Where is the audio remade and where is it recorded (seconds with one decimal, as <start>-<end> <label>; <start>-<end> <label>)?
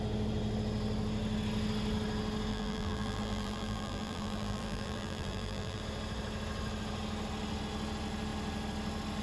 0.0-2.5 recorded; 2.5-5.8 remade; 5.8-9.2 recorded